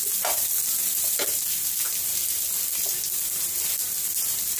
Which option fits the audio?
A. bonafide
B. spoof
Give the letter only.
A